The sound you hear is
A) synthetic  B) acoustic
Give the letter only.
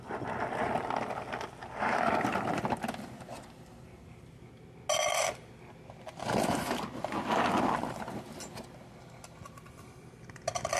B